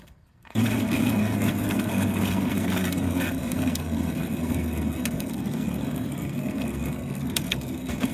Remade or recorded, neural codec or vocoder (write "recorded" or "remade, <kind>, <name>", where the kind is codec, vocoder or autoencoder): remade, codec, SNAC